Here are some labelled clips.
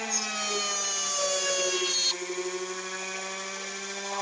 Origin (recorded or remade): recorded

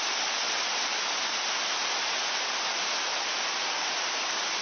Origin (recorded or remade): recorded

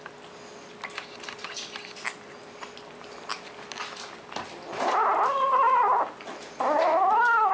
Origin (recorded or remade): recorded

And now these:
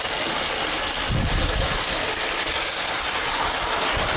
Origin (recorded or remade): recorded